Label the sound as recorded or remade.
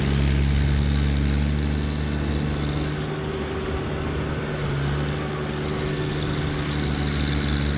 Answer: recorded